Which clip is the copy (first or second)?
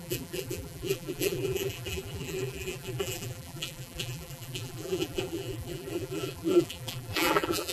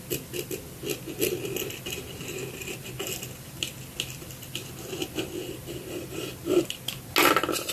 first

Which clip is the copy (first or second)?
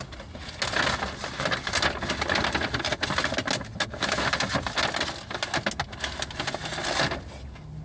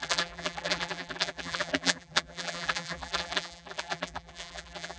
second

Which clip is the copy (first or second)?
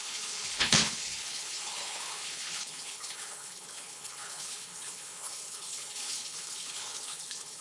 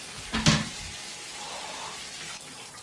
first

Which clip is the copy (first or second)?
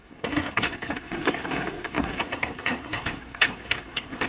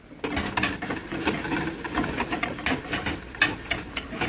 first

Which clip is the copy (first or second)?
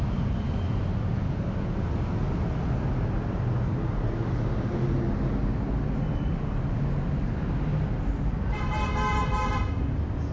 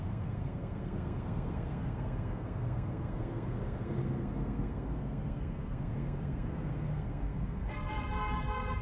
second